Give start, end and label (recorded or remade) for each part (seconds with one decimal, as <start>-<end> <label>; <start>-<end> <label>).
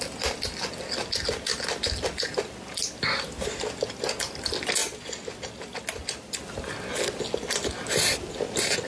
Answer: 0.0-8.9 recorded